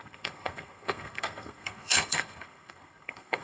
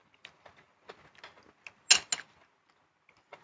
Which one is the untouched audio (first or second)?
second